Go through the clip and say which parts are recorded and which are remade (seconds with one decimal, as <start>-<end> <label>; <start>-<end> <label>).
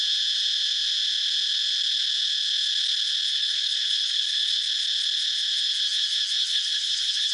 0.0-3.3 recorded; 3.3-4.6 remade; 4.6-6.4 recorded; 6.4-7.3 remade